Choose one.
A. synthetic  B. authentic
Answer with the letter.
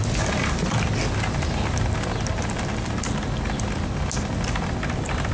B